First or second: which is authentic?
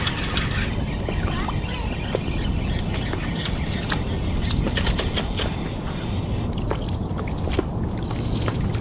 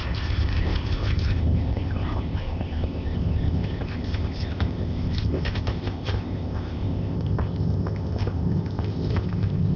first